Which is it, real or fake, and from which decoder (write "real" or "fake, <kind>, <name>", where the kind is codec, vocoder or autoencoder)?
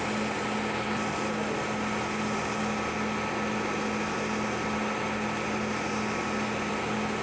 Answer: real